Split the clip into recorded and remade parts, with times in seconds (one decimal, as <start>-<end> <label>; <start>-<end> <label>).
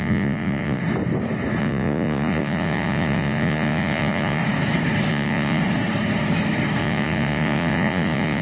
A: 0.0-0.8 remade; 0.8-1.6 recorded; 1.6-4.4 remade; 4.4-5.1 recorded; 5.1-5.6 remade; 5.6-6.8 recorded; 6.8-8.4 remade